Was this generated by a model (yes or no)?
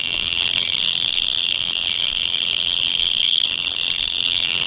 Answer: yes